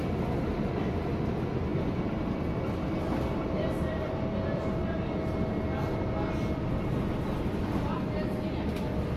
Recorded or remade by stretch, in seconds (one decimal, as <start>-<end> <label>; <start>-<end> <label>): 0.0-9.2 recorded